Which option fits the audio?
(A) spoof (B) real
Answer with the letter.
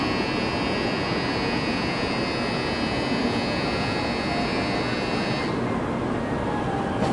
B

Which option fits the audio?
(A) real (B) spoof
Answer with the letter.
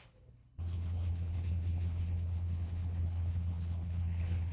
B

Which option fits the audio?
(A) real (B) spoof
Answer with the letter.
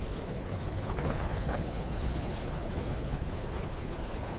B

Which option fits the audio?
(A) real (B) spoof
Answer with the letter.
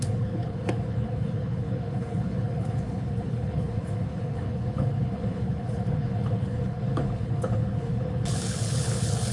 B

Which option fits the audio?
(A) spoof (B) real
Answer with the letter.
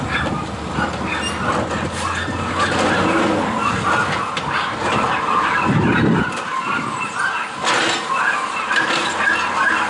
B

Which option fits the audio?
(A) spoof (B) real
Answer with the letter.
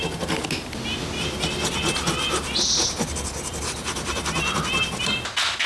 B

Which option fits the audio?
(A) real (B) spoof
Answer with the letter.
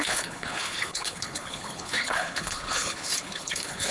B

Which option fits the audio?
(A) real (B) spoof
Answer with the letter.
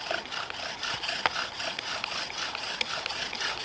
A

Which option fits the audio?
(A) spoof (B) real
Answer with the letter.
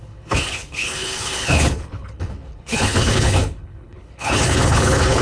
A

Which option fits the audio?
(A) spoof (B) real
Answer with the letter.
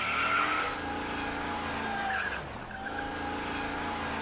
B